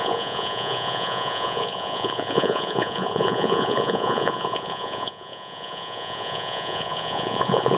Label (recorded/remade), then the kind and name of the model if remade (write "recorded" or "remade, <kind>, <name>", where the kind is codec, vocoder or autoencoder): remade, vocoder, Vocos